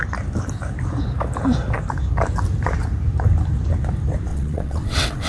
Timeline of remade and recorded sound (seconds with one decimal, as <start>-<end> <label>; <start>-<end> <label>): 0.0-4.3 recorded; 4.3-5.3 remade

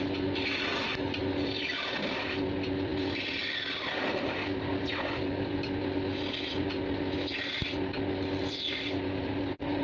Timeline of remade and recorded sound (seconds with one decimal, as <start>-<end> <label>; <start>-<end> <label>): 0.0-9.8 recorded